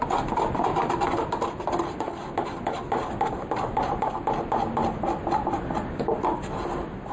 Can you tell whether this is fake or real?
real